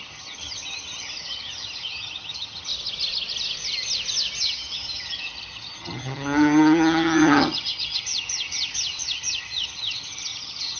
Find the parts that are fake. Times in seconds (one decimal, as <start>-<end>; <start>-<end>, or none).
0.0-2.7; 4.4-10.8